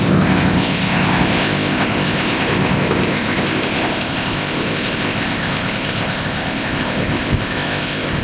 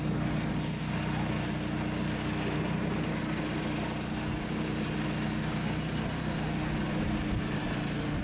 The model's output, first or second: first